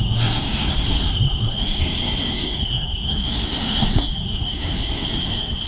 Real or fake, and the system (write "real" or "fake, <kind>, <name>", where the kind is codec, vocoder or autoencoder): fake, codec, SNAC